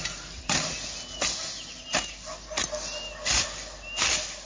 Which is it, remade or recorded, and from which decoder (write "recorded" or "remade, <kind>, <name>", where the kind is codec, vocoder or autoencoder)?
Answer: recorded